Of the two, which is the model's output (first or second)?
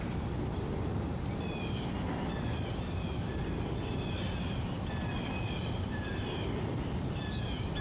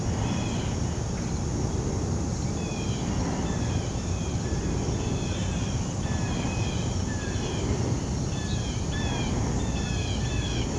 first